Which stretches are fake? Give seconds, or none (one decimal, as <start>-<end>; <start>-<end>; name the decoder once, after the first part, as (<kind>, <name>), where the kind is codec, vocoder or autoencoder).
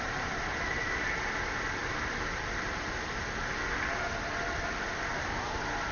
none